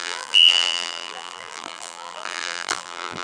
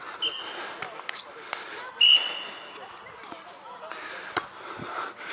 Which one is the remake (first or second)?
first